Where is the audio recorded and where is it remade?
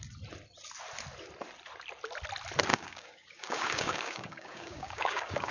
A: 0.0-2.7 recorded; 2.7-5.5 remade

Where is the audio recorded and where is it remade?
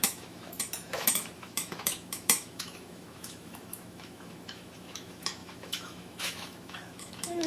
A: 0.0-7.5 remade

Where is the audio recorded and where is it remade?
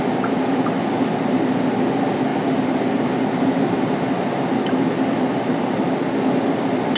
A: 0.0-7.0 recorded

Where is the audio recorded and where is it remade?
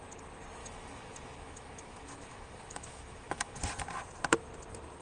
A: 0.0-0.6 recorded; 0.6-3.6 remade; 3.6-5.0 recorded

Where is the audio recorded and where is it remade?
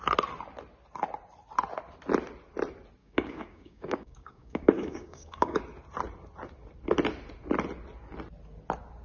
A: 0.0-3.0 recorded; 3.0-5.6 remade; 5.6-9.0 recorded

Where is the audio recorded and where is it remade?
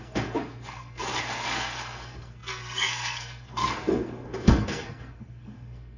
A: 0.0-6.0 remade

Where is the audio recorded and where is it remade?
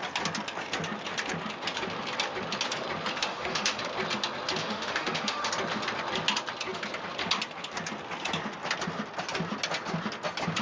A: 0.0-3.2 recorded; 3.2-3.8 remade; 3.8-4.6 recorded; 4.6-5.5 remade; 5.5-10.6 recorded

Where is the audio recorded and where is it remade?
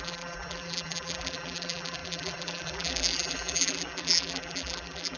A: 0.0-5.2 remade